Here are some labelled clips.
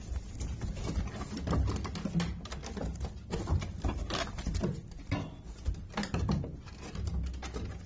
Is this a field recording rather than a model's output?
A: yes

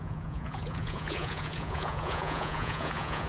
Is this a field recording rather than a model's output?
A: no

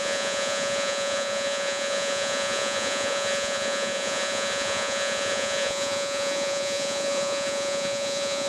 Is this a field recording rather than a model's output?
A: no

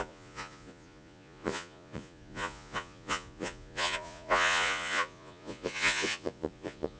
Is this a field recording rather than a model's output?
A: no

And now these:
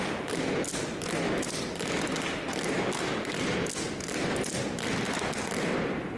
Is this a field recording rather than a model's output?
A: yes